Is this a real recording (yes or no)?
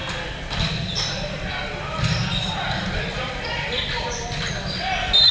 yes